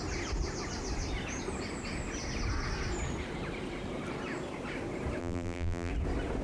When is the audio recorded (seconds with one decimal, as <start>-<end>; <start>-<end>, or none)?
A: 0.0-5.2; 5.9-6.4